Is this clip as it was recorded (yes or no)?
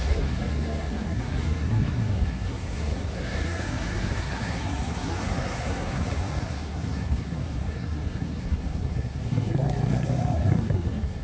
no